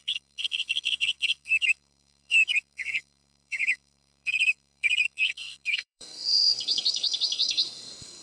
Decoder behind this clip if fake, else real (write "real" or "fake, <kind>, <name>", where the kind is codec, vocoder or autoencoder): fake, codec, SNAC